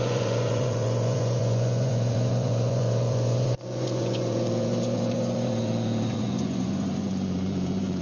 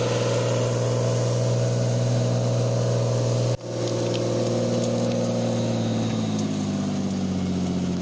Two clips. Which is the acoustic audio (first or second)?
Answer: second